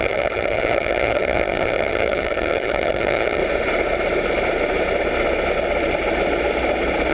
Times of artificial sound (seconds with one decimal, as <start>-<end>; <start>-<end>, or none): 0.0-3.4

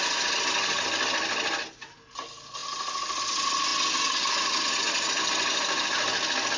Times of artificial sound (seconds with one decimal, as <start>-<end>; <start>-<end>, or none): none

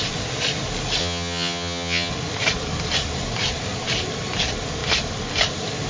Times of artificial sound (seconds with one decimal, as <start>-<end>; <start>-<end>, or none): 1.0-2.1

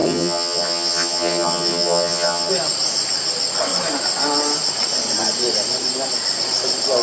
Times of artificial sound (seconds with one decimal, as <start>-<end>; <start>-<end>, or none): 0.0-2.5

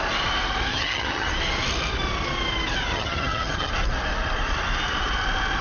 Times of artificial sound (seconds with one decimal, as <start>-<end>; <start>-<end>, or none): 0.7-1.3; 2.9-3.7

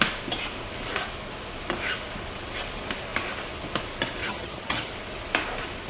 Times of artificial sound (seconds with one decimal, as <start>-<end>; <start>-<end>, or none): 4.2-4.9

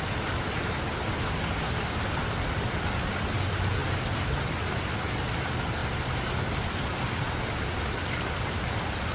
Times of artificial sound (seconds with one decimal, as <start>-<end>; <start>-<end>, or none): none

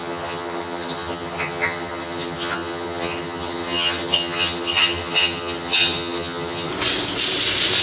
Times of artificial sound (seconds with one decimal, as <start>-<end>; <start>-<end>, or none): 0.0-6.7